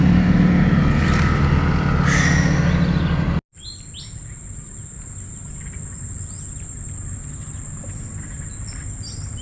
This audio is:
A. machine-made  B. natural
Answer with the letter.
B